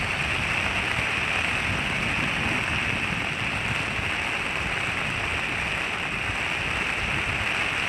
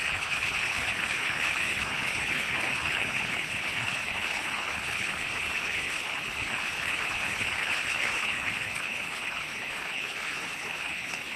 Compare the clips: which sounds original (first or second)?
first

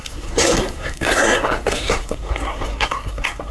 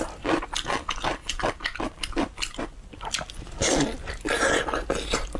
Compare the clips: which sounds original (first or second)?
second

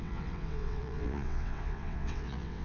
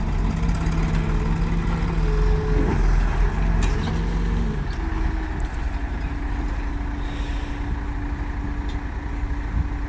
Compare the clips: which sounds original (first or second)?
second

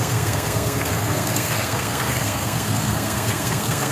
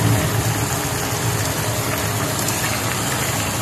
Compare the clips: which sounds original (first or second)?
second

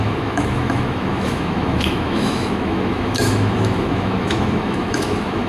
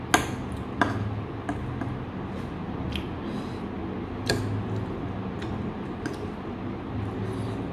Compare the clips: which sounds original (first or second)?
second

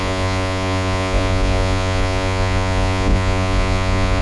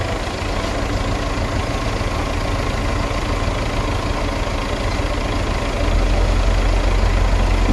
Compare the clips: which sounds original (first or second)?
second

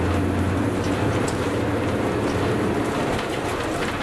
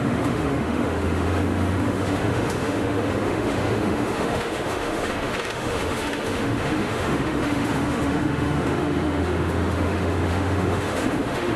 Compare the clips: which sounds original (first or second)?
first